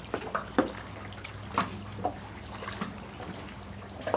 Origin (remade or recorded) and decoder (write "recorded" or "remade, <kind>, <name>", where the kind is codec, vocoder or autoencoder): recorded